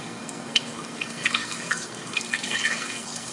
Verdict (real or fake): fake